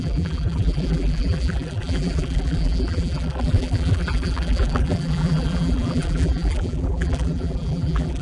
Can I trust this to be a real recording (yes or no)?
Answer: no